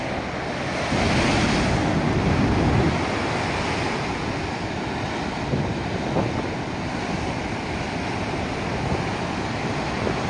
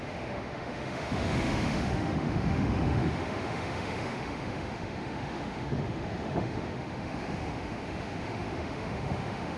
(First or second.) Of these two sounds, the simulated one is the second